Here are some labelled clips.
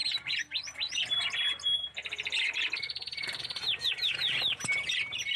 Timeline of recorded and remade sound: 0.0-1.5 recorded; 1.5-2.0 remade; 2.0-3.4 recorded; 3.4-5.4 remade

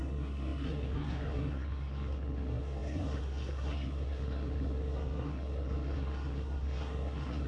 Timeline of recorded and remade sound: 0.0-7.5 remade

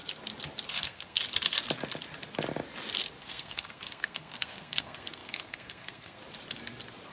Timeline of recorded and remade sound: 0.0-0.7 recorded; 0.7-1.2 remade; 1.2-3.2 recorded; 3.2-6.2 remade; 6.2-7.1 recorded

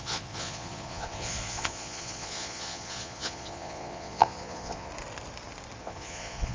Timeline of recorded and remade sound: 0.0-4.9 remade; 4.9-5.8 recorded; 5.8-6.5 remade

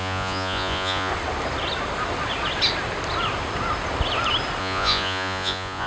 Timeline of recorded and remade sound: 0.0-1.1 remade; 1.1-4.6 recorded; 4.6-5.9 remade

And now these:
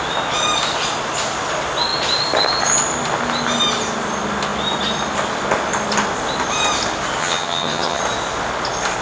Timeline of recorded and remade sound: 0.0-7.2 recorded; 7.2-8.0 remade; 8.0-9.0 recorded

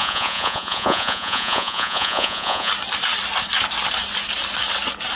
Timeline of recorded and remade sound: 0.0-2.7 remade; 2.7-5.2 recorded

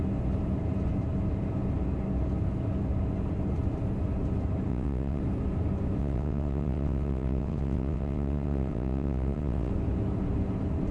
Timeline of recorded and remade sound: 0.0-4.7 recorded; 4.7-5.2 remade; 5.2-6.0 recorded; 6.0-9.7 remade; 9.7-10.9 recorded